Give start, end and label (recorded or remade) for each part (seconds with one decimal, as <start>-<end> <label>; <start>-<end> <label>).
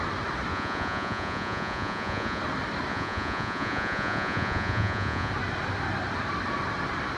0.0-0.5 recorded; 0.5-2.4 remade; 2.4-2.9 recorded; 2.9-5.3 remade; 5.3-7.2 recorded